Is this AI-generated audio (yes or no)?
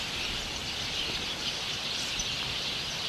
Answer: no